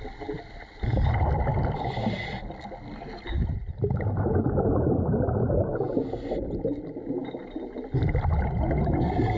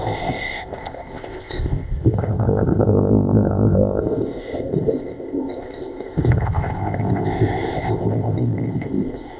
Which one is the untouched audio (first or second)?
first